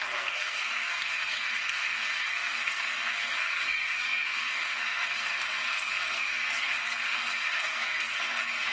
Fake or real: fake